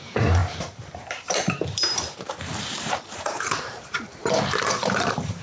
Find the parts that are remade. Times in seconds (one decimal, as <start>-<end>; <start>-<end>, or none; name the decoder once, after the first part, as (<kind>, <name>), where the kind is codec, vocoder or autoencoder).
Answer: 0.0-4.2 (vocoder, BigVGAN v2); 4.8-5.4